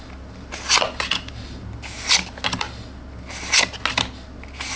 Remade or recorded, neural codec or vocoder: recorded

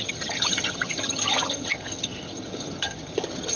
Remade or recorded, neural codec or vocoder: remade, vocoder, HiFi-GAN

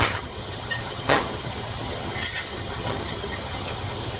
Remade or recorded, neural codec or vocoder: remade, vocoder, HiFi-GAN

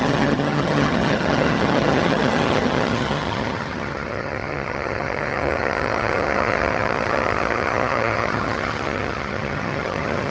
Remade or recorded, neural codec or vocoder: remade, vocoder, HiFi-GAN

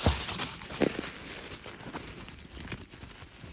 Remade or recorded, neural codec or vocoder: recorded